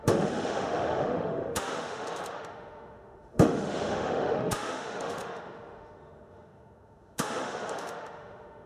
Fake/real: fake